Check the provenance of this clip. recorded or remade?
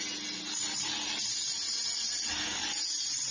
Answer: recorded